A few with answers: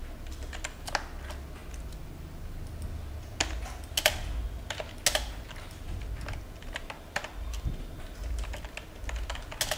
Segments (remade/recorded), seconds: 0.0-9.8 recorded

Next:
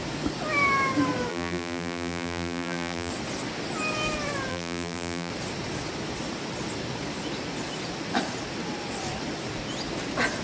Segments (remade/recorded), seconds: 0.0-1.3 recorded; 1.3-3.1 remade; 3.1-4.5 recorded; 4.5-5.3 remade; 5.3-10.4 recorded